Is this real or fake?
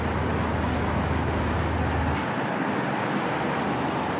real